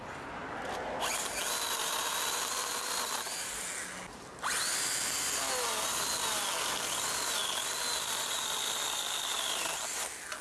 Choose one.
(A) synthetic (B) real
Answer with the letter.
B